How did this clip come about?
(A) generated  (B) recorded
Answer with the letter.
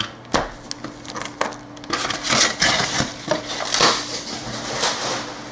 B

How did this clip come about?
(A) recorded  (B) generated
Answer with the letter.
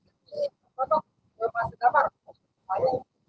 B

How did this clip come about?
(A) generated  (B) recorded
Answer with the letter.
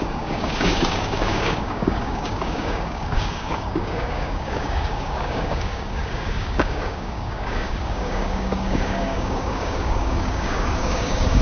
A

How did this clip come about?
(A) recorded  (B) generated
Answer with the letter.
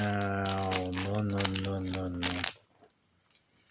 A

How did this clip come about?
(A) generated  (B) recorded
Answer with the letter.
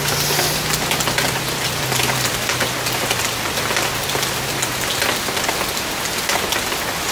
B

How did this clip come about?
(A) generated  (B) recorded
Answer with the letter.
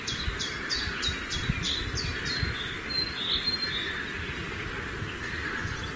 B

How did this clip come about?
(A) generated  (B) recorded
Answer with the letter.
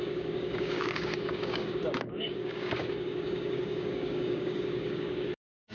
A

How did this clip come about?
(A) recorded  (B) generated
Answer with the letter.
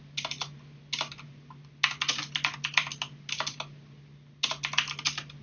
A